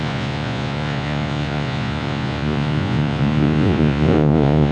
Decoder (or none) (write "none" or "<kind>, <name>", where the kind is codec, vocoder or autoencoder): vocoder, Vocos